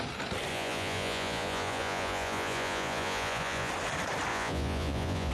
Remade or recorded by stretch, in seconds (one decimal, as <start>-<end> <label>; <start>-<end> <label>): 0.0-0.5 recorded; 0.5-3.7 remade; 3.7-4.3 recorded; 4.3-5.3 remade